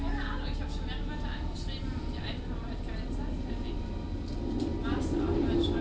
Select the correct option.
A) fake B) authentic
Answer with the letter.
B